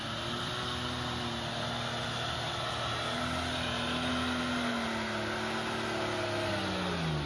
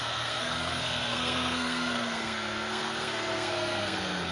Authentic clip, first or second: first